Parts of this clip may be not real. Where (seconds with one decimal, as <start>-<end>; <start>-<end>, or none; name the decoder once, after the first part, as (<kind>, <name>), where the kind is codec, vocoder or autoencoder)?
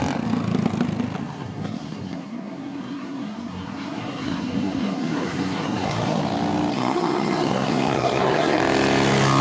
1.2-6.2 (codec, SNAC); 6.7-8.6